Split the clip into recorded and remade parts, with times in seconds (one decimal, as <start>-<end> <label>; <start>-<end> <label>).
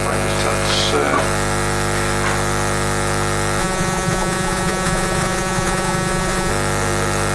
0.0-3.6 recorded; 3.6-6.5 remade; 6.5-7.3 recorded